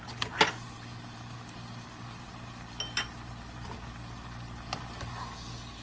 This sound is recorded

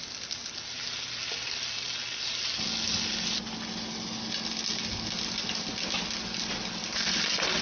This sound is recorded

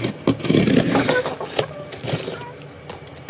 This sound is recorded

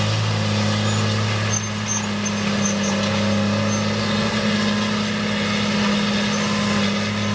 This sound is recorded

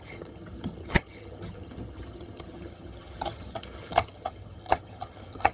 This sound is remade